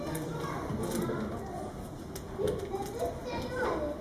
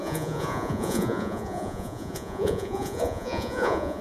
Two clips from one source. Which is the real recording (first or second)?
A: first